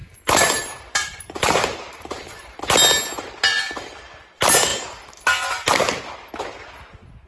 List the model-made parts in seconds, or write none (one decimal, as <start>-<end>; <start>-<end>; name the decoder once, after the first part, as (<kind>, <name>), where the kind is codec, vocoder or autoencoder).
0.0-2.6 (vocoder, BigVGAN v2)